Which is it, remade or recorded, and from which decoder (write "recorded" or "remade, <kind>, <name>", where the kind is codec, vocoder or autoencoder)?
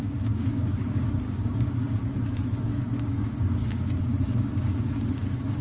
remade, codec, DAC